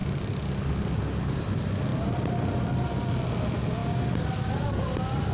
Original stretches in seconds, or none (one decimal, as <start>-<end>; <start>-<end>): 0.0-5.3